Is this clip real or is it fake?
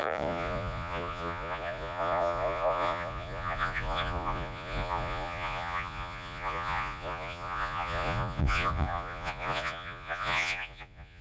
fake